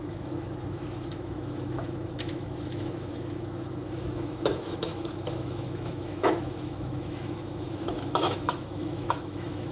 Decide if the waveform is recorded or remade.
remade